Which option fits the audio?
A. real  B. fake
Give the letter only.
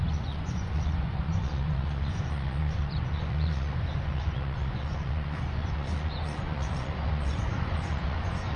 B